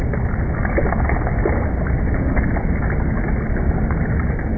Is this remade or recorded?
recorded